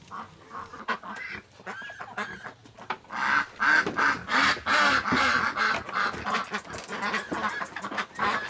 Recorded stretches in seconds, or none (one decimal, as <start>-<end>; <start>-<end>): 0.0-8.5